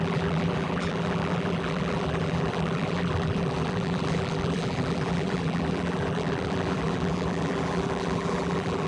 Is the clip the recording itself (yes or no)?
no